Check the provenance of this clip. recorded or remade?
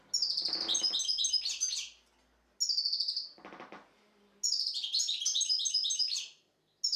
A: recorded